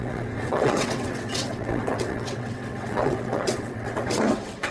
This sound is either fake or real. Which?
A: fake